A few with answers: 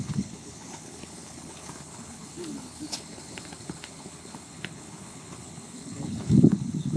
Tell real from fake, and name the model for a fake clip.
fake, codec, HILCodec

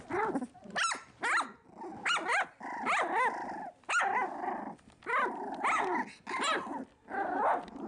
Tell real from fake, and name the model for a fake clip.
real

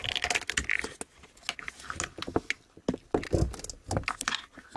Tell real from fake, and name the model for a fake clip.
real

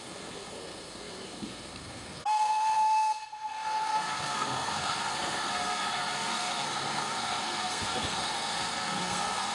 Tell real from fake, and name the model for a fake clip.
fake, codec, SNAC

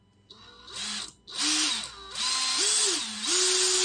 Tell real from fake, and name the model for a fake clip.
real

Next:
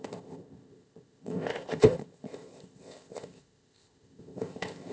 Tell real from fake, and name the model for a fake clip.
fake, codec, ZipCodec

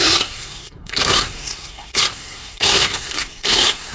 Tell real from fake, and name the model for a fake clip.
fake, codec, SNAC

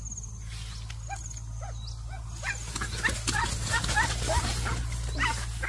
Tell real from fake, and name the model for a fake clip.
real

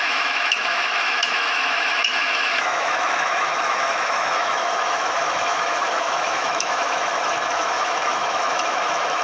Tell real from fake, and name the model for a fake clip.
fake, autoencoder, DAC-VAE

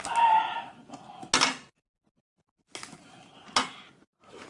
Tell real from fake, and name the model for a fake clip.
real